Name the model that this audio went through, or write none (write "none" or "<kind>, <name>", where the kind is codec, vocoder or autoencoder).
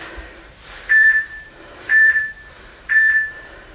vocoder, BigVGAN v2